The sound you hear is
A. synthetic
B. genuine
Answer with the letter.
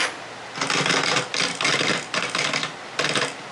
B